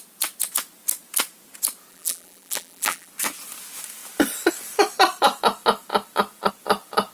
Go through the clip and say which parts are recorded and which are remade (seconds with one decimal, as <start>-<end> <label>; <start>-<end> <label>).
0.0-1.9 recorded; 1.9-3.1 remade; 3.1-7.1 recorded